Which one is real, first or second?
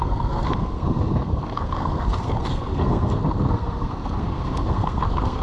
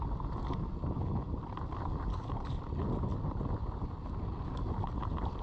second